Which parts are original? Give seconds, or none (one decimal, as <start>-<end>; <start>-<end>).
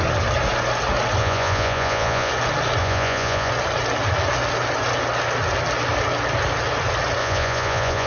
0.0-1.2; 2.3-2.8; 3.5-7.2